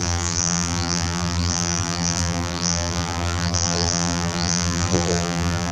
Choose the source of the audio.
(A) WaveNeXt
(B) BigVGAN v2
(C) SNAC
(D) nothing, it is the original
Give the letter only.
B